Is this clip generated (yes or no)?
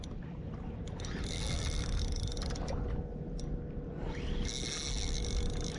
no